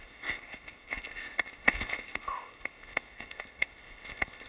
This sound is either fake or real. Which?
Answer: fake